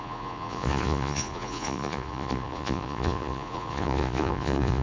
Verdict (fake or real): fake